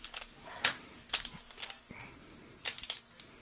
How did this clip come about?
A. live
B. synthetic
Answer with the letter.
A